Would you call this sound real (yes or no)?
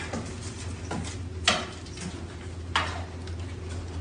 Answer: yes